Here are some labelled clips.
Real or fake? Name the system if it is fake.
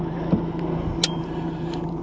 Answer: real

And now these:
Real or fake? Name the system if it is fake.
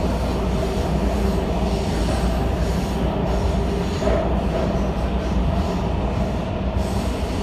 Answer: real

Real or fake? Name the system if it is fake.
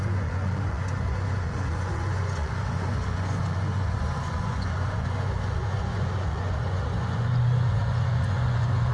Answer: fake, vocoder, Vocos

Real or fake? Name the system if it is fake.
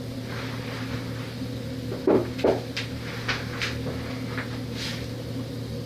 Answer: real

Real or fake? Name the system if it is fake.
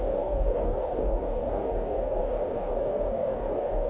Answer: fake, codec, DAC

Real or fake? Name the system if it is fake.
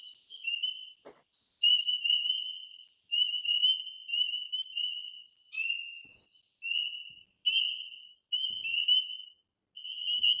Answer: real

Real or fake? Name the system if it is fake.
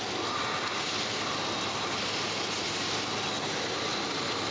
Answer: real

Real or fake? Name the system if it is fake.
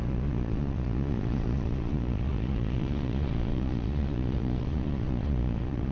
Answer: fake, vocoder, Vocos